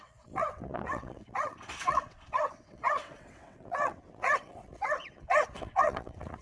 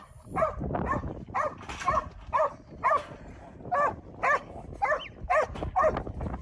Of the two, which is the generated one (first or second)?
first